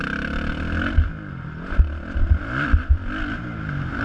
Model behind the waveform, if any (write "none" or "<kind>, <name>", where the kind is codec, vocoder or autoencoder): none